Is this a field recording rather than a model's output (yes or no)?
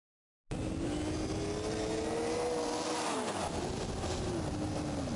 yes